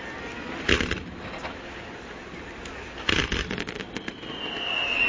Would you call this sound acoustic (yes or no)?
yes